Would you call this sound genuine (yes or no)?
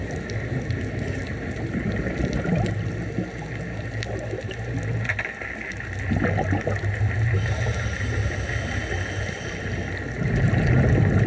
yes